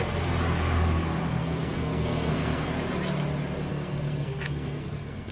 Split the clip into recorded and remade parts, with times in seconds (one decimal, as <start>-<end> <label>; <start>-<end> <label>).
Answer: 0.0-1.3 recorded; 1.3-2.7 remade; 2.7-3.7 recorded; 3.7-5.3 remade